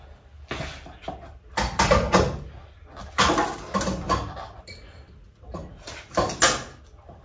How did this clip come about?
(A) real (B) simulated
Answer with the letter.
A